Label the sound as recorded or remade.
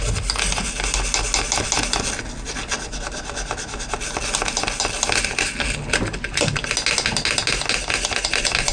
recorded